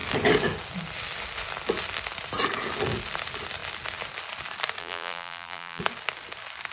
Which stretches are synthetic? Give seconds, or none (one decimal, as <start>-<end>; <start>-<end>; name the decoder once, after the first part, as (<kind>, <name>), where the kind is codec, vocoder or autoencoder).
4.8-5.8 (vocoder, BigVGAN v2)